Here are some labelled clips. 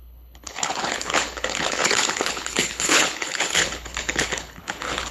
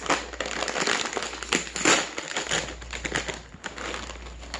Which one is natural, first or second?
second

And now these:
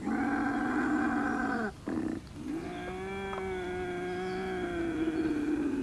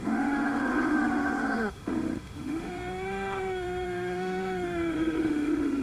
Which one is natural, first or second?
first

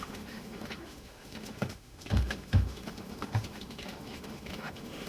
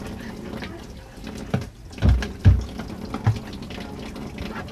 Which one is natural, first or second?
second